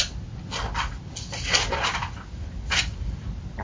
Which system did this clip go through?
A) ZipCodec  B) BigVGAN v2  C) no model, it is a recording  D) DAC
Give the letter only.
C